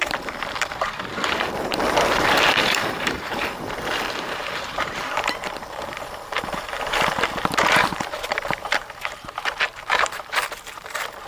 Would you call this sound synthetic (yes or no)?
yes